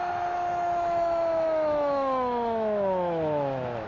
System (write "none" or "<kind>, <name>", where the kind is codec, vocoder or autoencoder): autoencoder, DAC-VAE